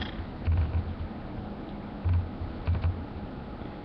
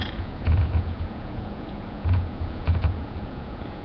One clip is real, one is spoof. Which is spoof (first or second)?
second